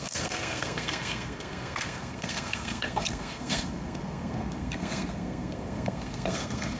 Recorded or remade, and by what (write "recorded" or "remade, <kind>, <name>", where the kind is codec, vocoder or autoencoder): remade, codec, SNAC